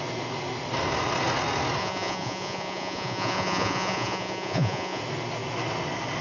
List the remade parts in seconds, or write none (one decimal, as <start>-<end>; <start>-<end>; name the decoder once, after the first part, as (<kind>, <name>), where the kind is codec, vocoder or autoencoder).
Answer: 1.8-5.0 (vocoder, Vocos)